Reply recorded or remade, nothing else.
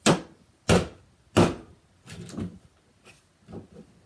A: recorded